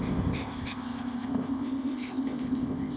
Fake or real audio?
fake